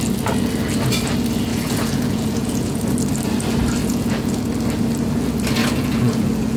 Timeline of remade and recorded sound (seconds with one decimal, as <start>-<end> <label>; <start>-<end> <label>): 0.0-1.5 recorded; 1.5-2.8 remade; 2.8-3.8 recorded; 3.8-4.4 remade; 4.4-5.6 recorded; 5.6-6.6 remade